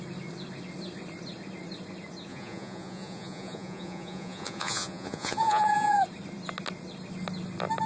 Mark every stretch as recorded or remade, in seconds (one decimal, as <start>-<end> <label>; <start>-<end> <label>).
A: 0.0-2.3 recorded; 2.3-6.0 remade; 6.0-7.9 recorded